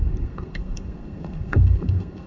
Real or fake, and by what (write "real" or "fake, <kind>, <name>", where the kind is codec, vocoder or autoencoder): fake, codec, SNAC